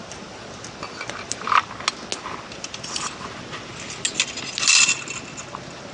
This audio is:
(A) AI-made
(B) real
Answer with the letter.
B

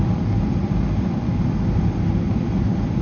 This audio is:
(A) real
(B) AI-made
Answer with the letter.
A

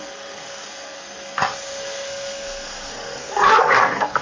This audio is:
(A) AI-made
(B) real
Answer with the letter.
A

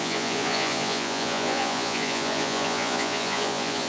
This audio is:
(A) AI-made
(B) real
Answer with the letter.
A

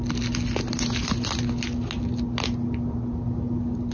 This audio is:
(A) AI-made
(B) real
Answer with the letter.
B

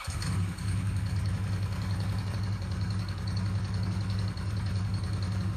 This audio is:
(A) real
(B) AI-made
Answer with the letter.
B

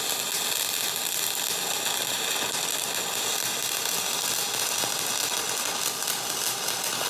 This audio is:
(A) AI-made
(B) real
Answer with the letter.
B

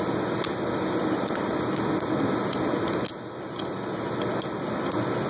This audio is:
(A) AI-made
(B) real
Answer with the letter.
B